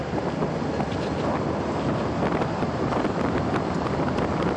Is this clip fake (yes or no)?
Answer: no